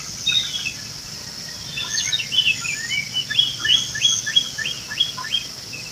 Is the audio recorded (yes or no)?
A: yes